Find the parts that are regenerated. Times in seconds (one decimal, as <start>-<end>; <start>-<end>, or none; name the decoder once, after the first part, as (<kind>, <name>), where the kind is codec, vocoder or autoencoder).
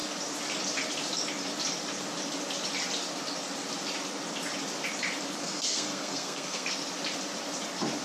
5.4-6.7 (codec, SNAC)